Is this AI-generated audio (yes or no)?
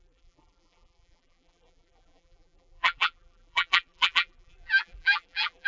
yes